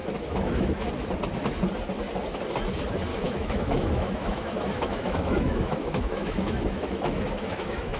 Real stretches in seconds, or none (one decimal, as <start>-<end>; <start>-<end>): 0.9-3.1